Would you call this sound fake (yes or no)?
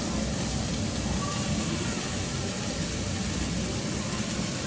no